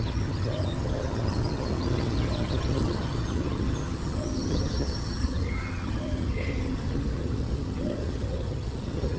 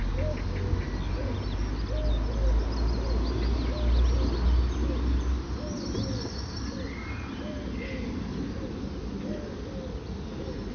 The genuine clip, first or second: second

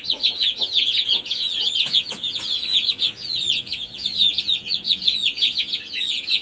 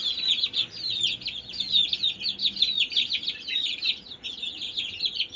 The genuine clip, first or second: second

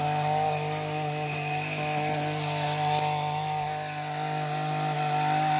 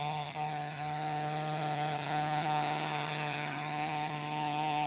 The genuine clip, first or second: first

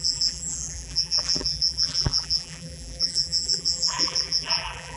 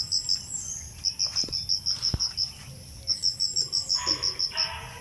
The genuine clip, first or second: second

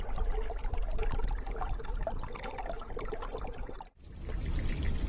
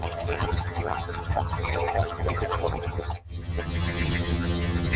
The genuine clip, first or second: first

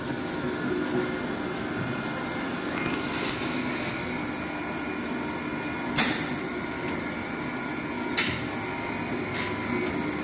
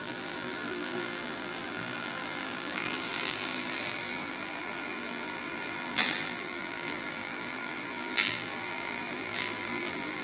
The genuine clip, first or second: first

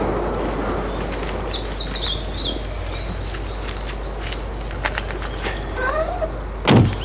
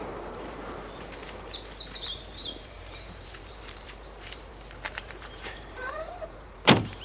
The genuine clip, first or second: first